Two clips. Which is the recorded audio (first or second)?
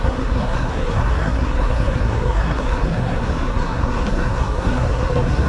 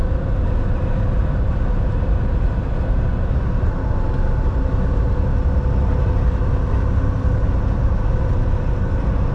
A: second